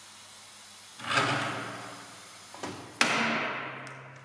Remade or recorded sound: recorded